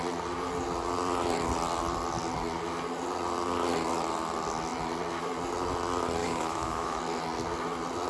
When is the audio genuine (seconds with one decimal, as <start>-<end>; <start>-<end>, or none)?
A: 0.0-6.2; 7.0-8.1